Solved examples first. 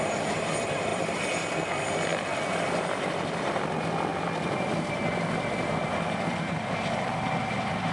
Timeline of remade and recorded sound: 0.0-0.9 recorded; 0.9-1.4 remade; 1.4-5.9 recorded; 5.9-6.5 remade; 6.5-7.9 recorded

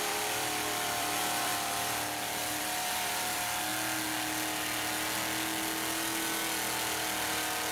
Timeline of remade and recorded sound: 0.0-3.7 remade; 3.7-7.7 recorded